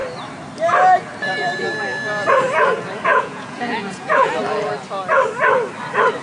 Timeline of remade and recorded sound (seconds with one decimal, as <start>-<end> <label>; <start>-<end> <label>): 0.0-3.1 recorded; 3.1-4.3 remade; 4.3-6.2 recorded